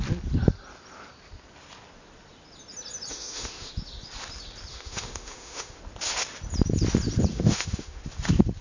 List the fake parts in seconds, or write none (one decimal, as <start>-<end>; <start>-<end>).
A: 3.1-3.7; 4.7-5.8; 7.3-8.0